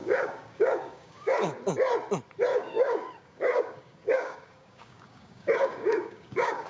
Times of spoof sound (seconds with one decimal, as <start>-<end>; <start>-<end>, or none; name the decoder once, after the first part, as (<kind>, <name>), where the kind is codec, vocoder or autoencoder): 0.0-1.6 (codec, DAC); 2.5-6.7